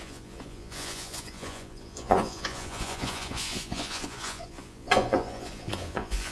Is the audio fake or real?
fake